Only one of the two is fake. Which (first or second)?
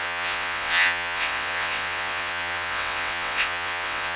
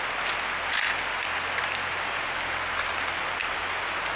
first